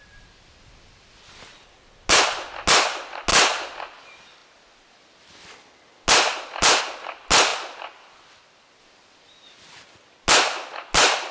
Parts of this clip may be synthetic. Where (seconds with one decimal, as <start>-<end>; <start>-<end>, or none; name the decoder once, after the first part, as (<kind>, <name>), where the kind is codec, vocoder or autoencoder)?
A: none